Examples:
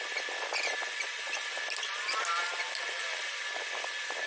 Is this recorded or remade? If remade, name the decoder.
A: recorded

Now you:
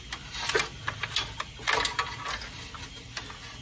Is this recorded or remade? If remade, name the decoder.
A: recorded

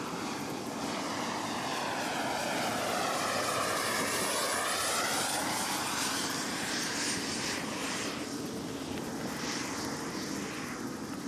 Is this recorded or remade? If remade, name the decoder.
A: remade, vocoder, BigVGAN v2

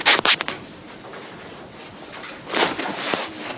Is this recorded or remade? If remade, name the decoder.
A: recorded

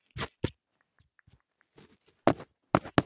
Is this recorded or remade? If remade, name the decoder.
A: recorded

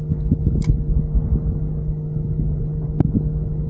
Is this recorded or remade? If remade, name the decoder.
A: recorded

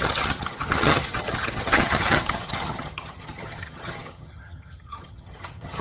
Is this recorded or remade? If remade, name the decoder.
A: remade, vocoder, HiFi-GAN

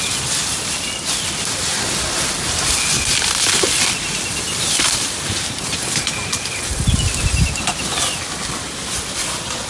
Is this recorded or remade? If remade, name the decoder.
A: recorded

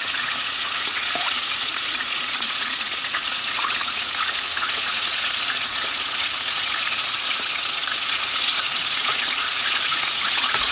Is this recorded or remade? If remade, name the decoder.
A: remade, vocoder, Vocos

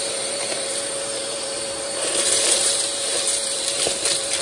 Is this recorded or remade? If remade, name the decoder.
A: remade, vocoder, BigVGAN v2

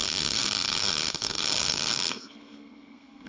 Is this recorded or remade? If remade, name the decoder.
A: remade, codec, SNAC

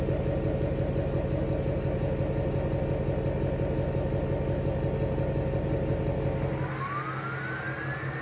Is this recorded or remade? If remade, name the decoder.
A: recorded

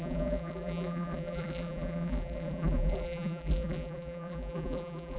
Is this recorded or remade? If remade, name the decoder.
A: remade, vocoder, BigVGAN v2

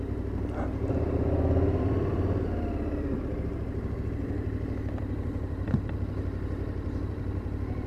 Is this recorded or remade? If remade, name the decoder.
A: remade, vocoder, BigVGAN v2